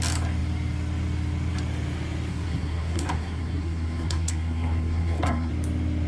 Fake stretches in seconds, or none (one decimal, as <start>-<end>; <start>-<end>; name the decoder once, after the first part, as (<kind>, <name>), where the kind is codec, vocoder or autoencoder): 2.3-5.5 (codec, SNAC)